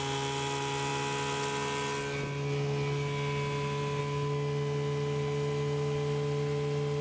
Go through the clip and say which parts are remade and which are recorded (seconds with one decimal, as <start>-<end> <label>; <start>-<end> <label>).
0.0-7.0 recorded